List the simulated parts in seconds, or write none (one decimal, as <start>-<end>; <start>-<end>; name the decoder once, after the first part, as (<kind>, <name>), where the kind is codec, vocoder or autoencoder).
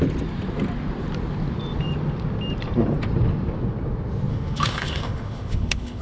4.3-6.0 (autoencoder, DAC-VAE)